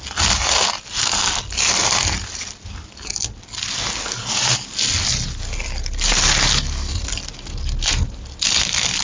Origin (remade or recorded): recorded